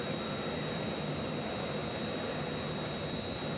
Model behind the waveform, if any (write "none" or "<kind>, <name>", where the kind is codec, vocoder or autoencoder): none